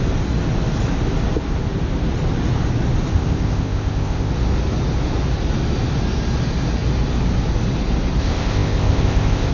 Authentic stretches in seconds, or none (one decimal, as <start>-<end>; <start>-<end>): 0.0-3.1; 4.3-8.2